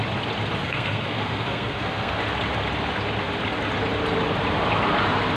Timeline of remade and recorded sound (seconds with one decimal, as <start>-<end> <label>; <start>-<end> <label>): 0.0-0.6 recorded; 0.6-2.2 remade; 2.2-5.4 recorded